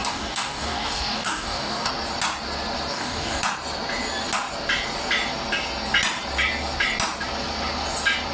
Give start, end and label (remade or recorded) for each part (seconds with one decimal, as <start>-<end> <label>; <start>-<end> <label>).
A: 0.0-1.9 remade; 1.9-2.9 recorded; 2.9-3.4 remade; 3.4-8.3 recorded